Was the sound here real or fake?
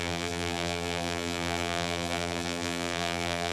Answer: fake